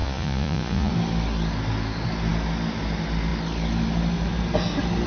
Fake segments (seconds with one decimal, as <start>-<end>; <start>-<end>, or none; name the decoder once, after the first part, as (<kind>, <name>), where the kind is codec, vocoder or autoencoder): 0.0-0.9 (vocoder, Vocos)